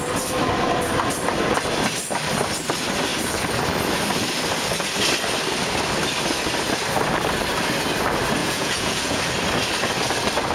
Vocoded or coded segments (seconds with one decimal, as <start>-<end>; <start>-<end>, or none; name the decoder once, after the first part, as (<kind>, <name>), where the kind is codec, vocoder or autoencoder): 8.4-9.2 (vocoder, Vocos)